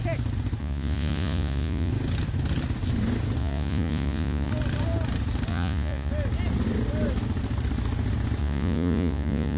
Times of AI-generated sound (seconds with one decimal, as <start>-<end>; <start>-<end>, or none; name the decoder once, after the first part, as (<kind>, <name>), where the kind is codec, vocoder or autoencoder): 0.6-1.9 (vocoder, Vocos); 3.4-4.5; 5.5-6.1; 8.4-9.6